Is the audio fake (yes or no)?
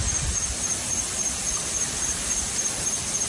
no